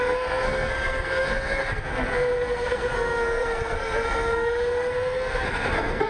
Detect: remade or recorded remade